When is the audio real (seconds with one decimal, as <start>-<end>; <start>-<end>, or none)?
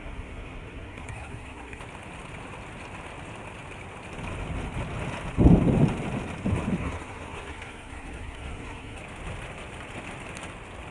1.8-6.8; 9.0-10.9